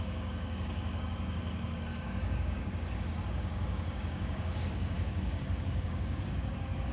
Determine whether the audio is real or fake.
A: fake